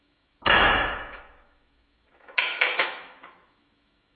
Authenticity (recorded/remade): remade